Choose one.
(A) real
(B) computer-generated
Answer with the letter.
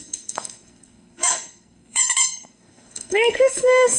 B